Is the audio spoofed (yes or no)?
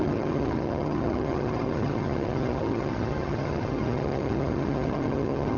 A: yes